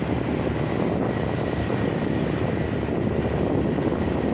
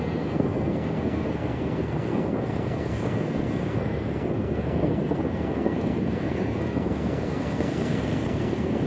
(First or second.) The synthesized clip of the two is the second